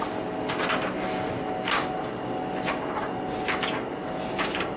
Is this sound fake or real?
real